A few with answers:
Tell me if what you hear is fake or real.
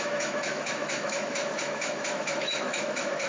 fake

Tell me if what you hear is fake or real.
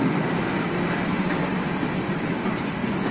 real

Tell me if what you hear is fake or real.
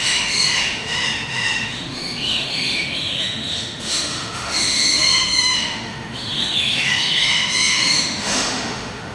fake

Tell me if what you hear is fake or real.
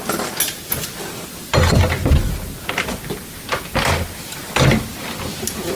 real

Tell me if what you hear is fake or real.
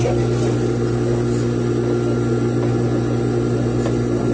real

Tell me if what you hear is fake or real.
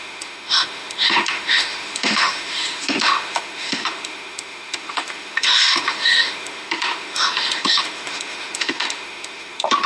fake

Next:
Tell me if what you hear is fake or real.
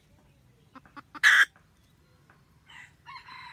real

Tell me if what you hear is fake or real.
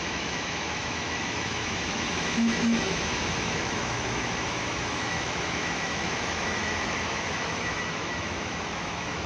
fake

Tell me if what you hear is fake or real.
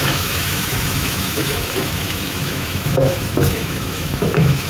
fake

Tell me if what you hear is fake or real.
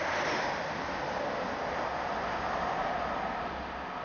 real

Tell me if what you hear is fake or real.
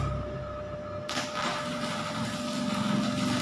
real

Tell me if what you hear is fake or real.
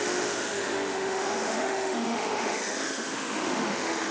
fake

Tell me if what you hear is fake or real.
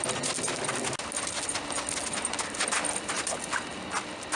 real